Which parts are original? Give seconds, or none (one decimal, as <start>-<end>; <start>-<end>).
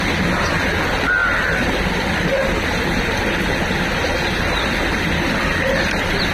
0.0-6.3